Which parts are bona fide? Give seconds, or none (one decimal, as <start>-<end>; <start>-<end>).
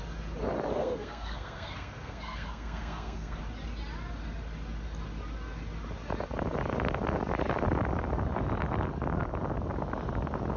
0.0-0.8; 3.4-10.6